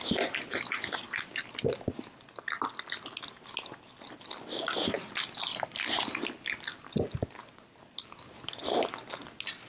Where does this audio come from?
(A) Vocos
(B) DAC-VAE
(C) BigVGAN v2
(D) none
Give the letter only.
D